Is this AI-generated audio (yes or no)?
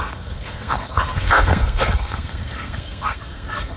yes